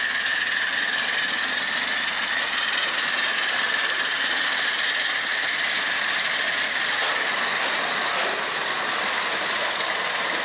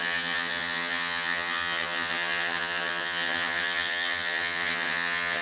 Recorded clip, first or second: first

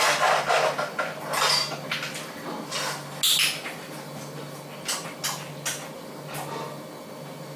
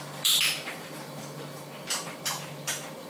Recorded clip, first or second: first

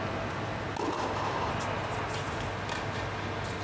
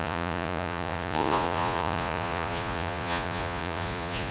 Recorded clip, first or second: first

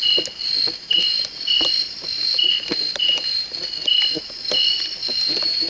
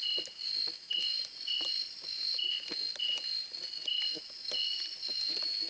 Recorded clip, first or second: second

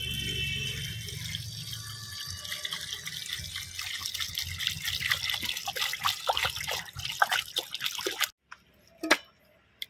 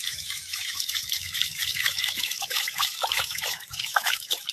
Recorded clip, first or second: first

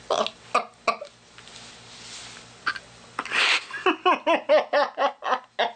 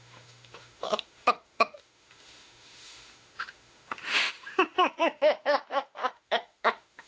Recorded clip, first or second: first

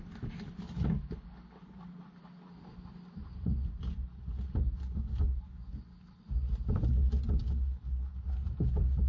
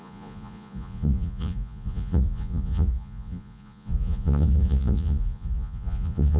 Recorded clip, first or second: first